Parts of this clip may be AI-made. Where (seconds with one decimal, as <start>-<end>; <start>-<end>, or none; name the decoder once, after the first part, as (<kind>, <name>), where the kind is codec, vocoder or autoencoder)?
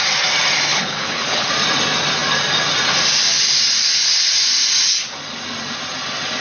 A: 0.7-1.5 (codec, HILCodec)